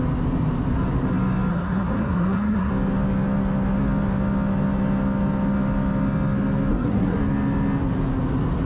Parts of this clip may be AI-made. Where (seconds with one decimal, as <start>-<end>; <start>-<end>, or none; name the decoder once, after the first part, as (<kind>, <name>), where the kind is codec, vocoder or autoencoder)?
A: 1.5-2.7 (codec, SNAC); 6.7-7.2